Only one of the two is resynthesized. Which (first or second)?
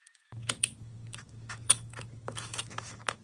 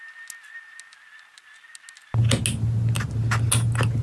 first